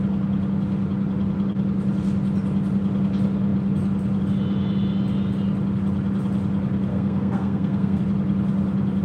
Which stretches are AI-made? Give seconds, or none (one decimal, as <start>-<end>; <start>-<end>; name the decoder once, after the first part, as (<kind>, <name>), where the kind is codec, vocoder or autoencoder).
6.9-8.0 (codec, SNAC)